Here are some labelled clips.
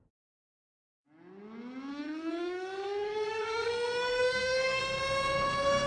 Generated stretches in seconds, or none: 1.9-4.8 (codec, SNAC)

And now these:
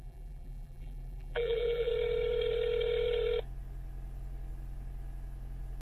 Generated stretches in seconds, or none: 0.0-1.9 (vocoder, BigVGAN v2)

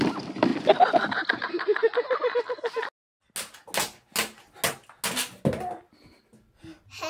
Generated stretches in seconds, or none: none

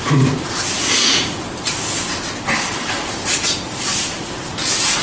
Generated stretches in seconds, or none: 1.0-1.5 (vocoder, BigVGAN v2)

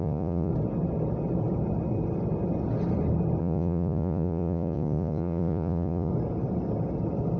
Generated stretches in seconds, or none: 0.0-0.5 (vocoder, Vocos); 3.4-6.1

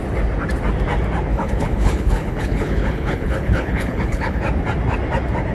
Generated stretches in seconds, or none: 1.3-4.4 (codec, HILCodec)

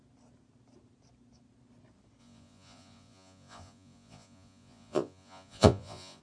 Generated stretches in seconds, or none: 2.2-6.2 (vocoder, Vocos)